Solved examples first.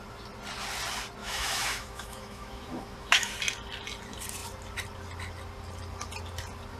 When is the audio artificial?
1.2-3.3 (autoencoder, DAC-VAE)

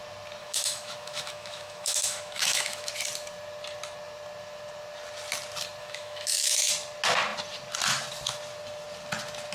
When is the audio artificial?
0.4-2.9 (autoencoder, DAC-VAE); 5.8-6.7